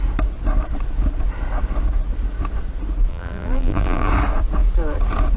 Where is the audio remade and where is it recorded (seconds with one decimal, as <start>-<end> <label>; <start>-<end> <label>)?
0.0-3.1 recorded; 3.1-4.1 remade; 4.1-5.4 recorded